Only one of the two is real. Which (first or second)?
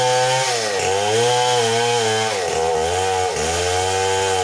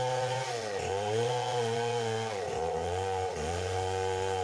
first